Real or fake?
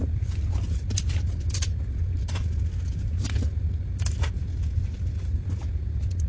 real